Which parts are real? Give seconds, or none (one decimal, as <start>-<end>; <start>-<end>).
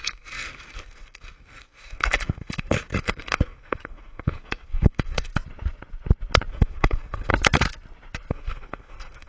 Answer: 5.3-6.5; 7.3-8.3